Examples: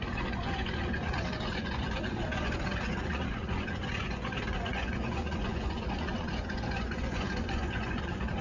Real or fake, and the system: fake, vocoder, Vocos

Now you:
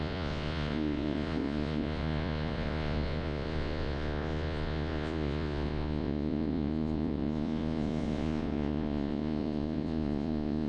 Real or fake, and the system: fake, vocoder, Vocos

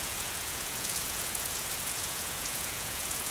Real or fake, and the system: fake, vocoder, Vocos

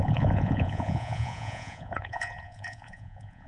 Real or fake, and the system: fake, vocoder, Vocos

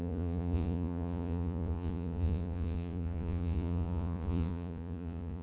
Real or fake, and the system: fake, vocoder, Vocos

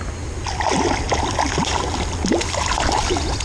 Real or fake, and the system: real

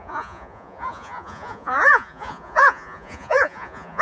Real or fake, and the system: fake, vocoder, Vocos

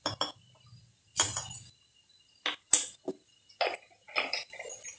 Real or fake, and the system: real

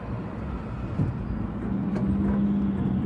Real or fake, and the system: real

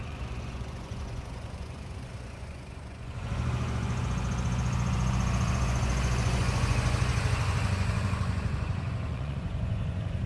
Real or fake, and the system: fake, vocoder, Vocos